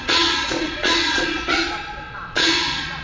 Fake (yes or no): yes